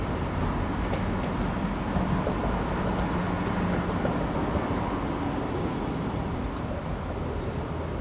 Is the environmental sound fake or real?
real